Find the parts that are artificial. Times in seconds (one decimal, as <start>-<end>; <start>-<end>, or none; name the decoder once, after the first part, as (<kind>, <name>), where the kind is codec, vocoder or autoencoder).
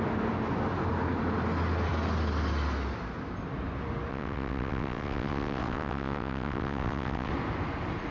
4.1-7.3 (vocoder, WaveNeXt)